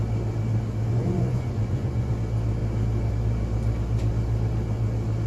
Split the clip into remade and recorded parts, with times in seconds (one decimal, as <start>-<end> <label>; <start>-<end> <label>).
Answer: 0.0-0.9 recorded; 0.9-2.1 remade; 2.1-5.3 recorded